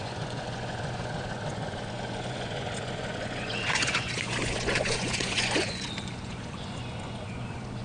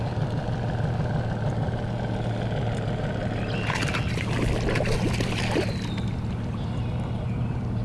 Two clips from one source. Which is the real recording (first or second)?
second